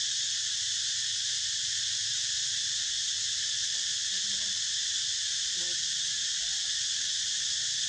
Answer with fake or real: fake